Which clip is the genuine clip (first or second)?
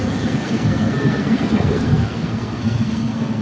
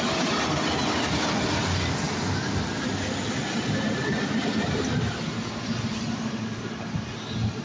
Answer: second